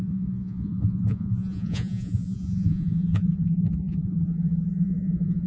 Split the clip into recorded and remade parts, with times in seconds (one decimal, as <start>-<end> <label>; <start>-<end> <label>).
0.0-5.5 remade